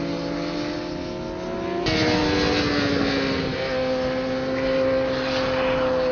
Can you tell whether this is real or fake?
real